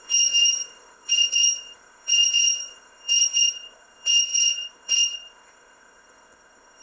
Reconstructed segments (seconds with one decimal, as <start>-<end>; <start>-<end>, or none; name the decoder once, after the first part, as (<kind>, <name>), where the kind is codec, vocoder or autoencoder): 0.0-6.8 (codec, ZipCodec)